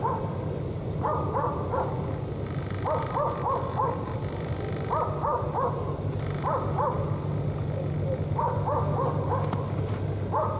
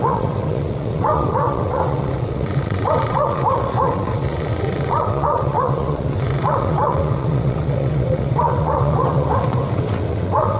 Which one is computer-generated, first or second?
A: second